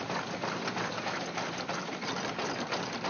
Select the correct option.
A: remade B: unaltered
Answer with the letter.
B